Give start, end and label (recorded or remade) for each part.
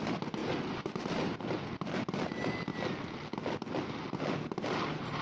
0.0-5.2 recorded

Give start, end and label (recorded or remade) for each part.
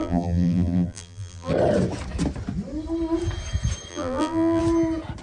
0.0-1.5 remade; 1.5-3.9 recorded; 3.9-4.6 remade; 4.6-5.2 recorded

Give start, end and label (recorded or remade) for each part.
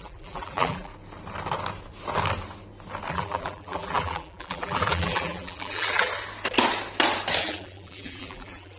0.0-0.9 remade; 0.9-3.1 recorded; 3.1-6.1 remade; 6.1-7.4 recorded; 7.4-8.8 remade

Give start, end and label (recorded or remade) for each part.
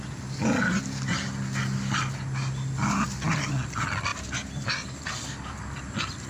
0.0-6.3 recorded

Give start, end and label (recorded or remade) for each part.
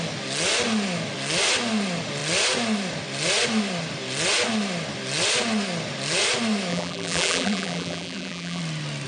0.0-6.7 recorded; 6.7-8.6 remade; 8.6-9.1 recorded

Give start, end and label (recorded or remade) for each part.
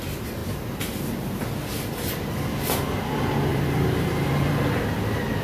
0.0-3.5 recorded; 3.5-4.6 remade; 4.6-5.4 recorded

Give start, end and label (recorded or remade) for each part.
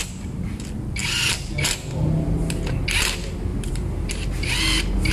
0.0-1.0 recorded; 1.0-1.7 remade; 1.7-3.5 recorded; 3.5-4.1 remade; 4.1-5.1 recorded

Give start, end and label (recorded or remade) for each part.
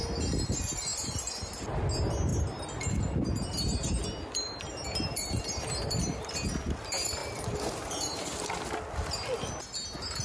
0.0-2.3 recorded; 2.3-6.3 remade; 6.3-7.2 recorded; 7.2-8.5 remade; 8.5-10.2 recorded